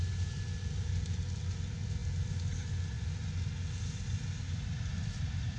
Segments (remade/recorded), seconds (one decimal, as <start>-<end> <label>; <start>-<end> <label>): 0.0-5.6 recorded